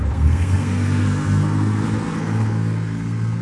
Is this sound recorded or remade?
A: remade